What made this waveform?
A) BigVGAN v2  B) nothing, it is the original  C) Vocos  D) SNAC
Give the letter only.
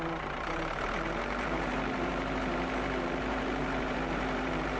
A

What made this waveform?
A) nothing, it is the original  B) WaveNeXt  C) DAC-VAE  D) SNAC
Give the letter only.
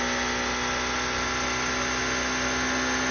A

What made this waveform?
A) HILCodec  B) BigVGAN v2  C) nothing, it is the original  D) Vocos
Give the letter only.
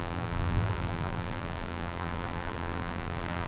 B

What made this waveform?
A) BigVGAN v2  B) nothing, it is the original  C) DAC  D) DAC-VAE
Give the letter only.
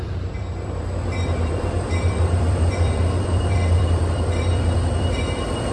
A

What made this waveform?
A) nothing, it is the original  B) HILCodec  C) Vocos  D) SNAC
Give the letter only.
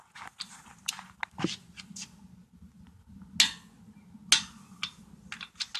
A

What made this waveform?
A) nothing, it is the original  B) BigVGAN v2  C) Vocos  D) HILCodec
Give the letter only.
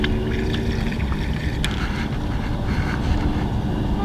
A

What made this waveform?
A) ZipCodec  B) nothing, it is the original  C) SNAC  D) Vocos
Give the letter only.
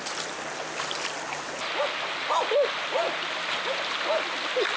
B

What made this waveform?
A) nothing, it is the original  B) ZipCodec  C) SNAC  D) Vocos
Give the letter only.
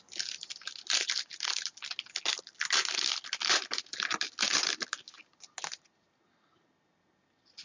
A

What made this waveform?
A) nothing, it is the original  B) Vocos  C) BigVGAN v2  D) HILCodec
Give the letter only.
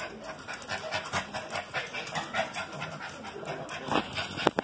A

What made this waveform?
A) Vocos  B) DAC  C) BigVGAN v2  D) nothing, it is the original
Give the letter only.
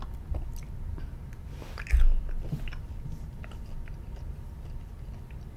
D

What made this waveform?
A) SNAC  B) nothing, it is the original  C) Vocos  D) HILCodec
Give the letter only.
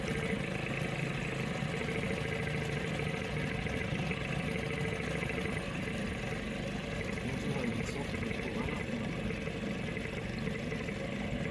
B